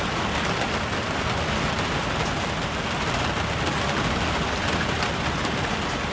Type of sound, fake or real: real